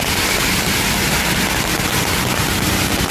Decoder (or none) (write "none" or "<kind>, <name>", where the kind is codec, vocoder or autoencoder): none